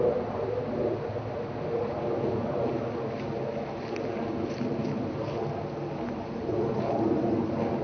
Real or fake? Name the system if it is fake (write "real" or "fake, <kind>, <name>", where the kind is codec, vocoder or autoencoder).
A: real